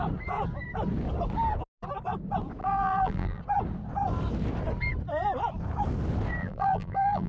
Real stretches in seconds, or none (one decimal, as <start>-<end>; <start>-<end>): 0.0-2.6; 3.4-6.4